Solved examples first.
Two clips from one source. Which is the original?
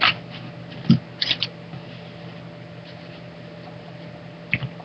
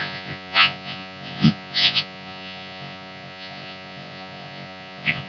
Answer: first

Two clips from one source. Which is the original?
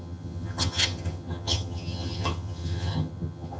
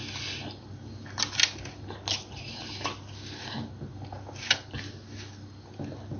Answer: second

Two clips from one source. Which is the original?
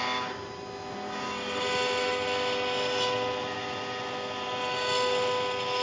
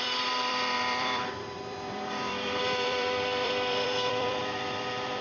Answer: first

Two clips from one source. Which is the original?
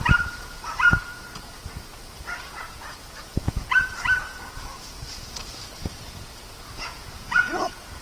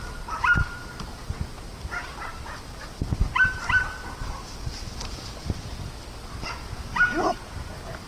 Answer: second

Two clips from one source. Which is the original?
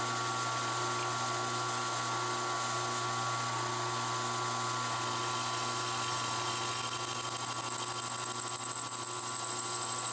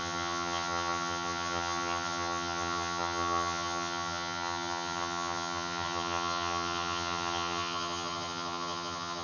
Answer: first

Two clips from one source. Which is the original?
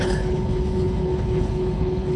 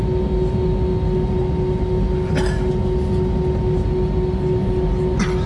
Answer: second